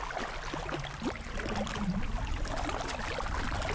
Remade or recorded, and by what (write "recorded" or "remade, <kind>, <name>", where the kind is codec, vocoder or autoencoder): recorded